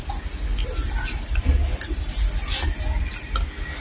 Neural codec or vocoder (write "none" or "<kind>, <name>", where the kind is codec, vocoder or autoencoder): none